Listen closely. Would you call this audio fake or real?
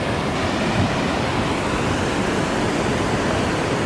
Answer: fake